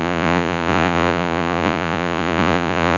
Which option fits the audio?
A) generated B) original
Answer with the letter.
A